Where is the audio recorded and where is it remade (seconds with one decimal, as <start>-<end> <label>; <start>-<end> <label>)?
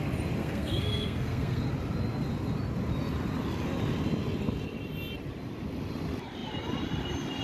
0.0-0.4 recorded; 0.4-1.6 remade; 1.6-7.4 recorded